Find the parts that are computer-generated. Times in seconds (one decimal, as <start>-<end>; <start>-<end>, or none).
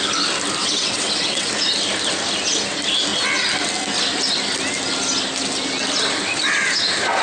0.6-1.5